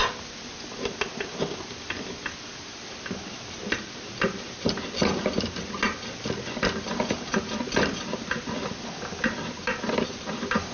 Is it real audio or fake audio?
real